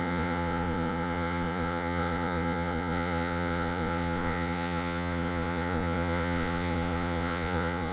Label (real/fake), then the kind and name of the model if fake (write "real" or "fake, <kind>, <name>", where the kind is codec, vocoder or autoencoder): fake, vocoder, Vocos